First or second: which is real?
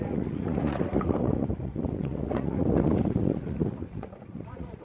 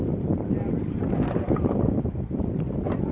second